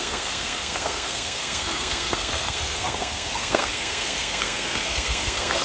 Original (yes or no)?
no